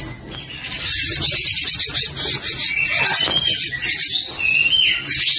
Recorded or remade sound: recorded